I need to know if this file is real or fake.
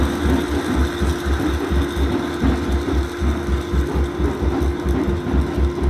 real